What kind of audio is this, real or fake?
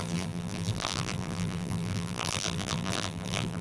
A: fake